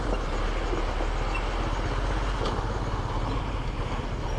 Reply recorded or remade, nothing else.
recorded